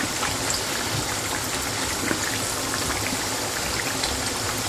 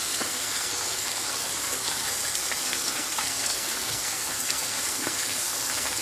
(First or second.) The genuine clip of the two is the first